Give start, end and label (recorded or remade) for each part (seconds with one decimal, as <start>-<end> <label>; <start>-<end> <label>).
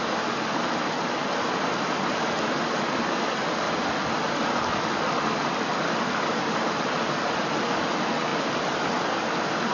0.0-9.7 recorded